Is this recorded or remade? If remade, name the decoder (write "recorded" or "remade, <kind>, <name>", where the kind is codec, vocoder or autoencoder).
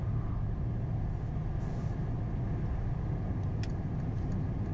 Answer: recorded